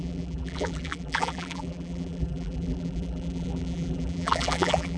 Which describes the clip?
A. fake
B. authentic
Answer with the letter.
A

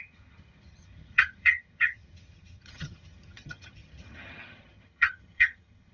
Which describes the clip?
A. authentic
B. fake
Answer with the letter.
B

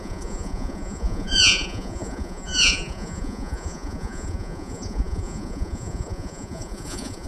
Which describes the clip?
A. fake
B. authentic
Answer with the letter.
A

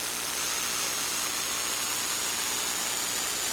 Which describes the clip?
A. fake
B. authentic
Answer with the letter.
B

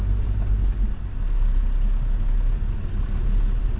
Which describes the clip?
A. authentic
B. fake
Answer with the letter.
A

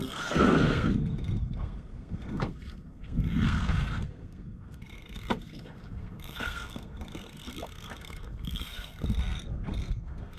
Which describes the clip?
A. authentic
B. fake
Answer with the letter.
B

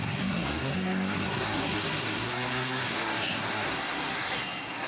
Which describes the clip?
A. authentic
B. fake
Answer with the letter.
B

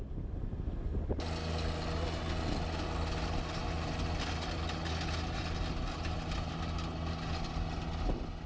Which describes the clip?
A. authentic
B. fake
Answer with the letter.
A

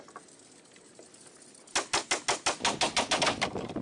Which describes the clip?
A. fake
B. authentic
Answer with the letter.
B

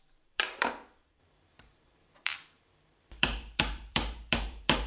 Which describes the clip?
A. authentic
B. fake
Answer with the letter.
B